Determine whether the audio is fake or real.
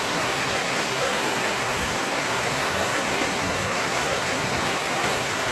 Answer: fake